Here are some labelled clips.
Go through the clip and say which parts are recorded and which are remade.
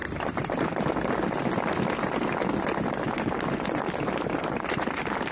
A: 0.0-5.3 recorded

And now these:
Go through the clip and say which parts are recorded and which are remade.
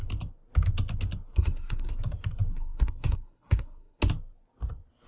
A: 0.0-1.3 recorded; 1.3-2.0 remade; 2.0-2.5 recorded; 2.5-4.0 remade; 4.0-5.1 recorded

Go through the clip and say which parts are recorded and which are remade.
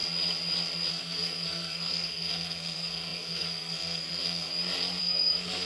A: 0.0-0.9 recorded; 0.9-4.5 remade; 4.5-5.0 recorded; 5.0-5.6 remade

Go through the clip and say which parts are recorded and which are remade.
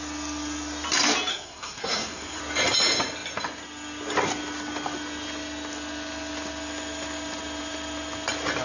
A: 0.0-1.3 recorded; 1.3-2.4 remade; 2.4-8.6 recorded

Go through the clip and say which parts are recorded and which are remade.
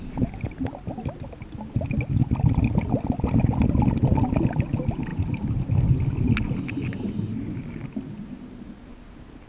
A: 0.0-9.5 recorded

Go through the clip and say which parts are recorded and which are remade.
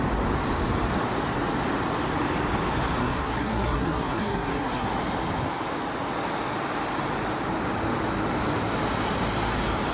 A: 0.0-3.0 recorded; 3.0-4.9 remade; 4.9-9.9 recorded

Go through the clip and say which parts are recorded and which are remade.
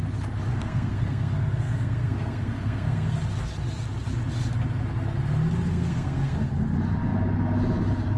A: 0.0-0.5 recorded; 0.5-3.2 remade; 3.2-5.7 recorded; 5.7-6.5 remade; 6.5-8.2 recorded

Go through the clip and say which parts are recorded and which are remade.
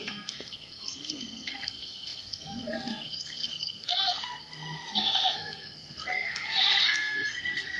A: 0.0-7.8 remade